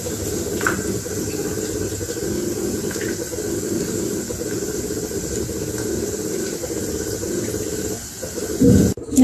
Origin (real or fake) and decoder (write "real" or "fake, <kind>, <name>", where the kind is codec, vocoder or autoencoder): real